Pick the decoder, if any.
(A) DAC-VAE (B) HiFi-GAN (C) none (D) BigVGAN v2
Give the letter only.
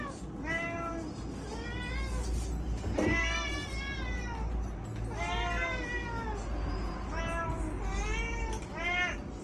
C